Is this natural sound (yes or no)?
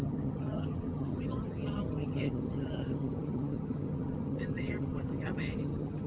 no